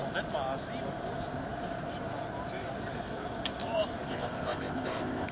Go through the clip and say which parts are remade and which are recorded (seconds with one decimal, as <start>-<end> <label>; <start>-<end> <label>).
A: 0.0-4.1 recorded; 4.1-5.3 remade